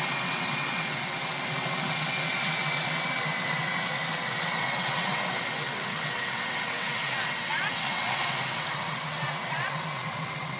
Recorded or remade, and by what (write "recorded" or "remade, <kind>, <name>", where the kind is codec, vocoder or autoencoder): remade, vocoder, WaveNeXt